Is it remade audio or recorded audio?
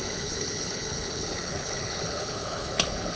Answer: remade